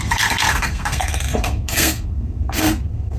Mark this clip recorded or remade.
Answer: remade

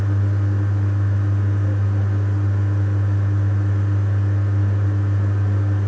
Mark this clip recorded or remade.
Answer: recorded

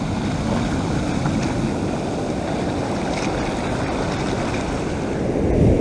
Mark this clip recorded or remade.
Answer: recorded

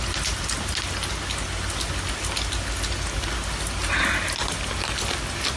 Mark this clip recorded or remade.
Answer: recorded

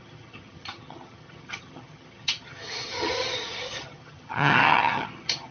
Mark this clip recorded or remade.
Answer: remade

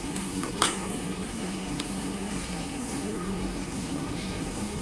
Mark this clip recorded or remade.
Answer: remade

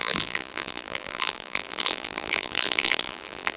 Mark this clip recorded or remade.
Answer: remade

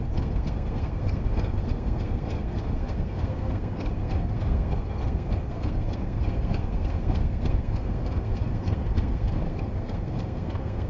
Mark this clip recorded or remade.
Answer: remade